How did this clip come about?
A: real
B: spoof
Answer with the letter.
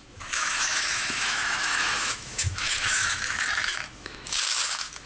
B